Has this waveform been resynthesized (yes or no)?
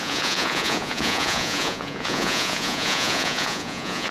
yes